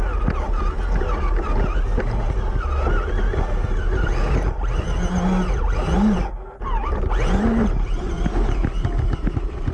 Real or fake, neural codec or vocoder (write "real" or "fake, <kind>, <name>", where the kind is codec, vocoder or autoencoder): real